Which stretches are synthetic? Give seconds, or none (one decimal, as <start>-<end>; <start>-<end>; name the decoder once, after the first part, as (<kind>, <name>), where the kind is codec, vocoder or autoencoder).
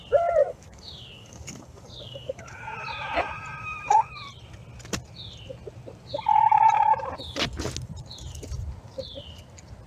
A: 0.5-2.6 (codec, DAC)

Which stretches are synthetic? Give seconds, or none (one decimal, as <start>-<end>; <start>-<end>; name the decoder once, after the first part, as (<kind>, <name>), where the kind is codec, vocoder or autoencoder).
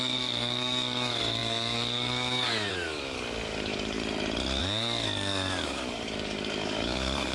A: 0.0-4.0 (codec, DAC); 4.6-7.3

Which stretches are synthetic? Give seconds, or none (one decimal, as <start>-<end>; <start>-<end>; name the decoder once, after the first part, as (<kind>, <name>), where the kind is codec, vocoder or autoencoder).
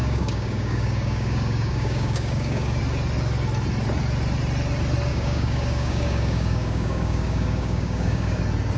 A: 0.0-2.8 (codec, DAC); 5.1-8.4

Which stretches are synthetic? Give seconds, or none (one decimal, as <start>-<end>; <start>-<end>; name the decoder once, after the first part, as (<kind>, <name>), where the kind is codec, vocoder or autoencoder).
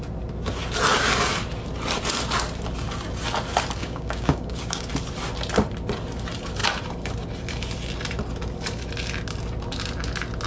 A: 3.8-4.9 (codec, DAC)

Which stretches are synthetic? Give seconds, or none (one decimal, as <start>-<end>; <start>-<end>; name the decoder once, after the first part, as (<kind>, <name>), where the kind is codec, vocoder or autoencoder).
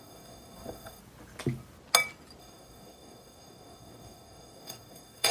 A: 0.0-1.0 (codec, DAC); 2.4-5.3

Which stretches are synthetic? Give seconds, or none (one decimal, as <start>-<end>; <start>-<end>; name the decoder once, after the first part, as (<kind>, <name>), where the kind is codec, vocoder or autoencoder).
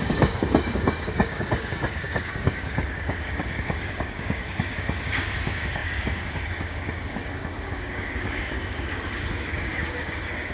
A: 0.0-10.5 (codec, DAC)